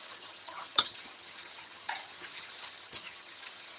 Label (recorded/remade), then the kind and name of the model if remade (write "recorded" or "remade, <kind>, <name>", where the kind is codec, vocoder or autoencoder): remade, vocoder, HiFi-GAN